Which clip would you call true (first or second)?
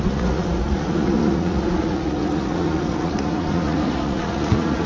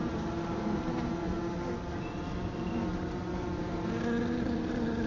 second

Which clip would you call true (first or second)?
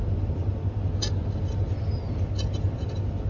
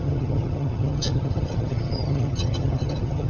first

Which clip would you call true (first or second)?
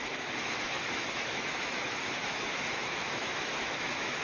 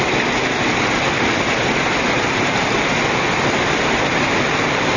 second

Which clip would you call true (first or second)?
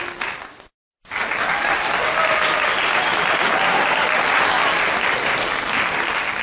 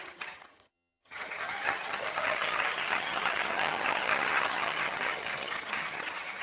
first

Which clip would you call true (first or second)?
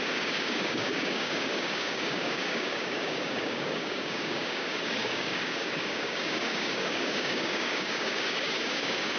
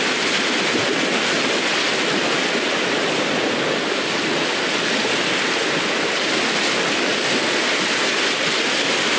second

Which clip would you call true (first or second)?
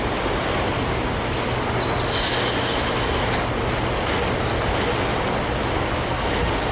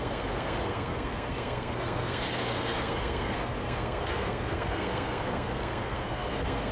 first